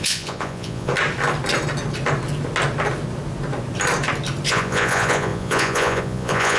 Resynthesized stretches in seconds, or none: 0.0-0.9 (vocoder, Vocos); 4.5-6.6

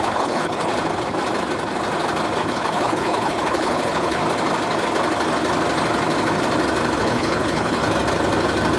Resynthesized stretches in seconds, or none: 0.0-0.7 (codec, HILCodec); 2.4-4.2; 7.0-7.8

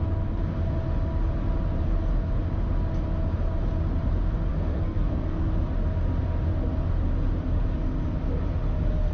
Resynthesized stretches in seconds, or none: 4.5-5.5 (codec, SNAC)

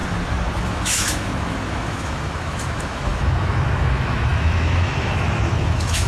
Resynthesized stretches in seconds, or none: 0.6-6.1 (autoencoder, DAC-VAE)

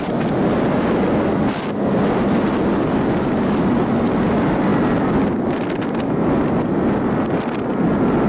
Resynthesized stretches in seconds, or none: none

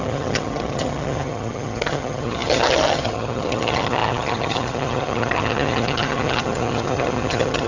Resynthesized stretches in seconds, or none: 0.0-7.7 (vocoder, HiFi-GAN)

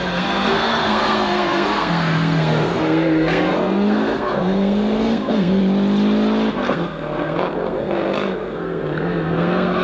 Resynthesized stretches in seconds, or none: 0.0-5.6 (codec, SNAC); 6.5-9.8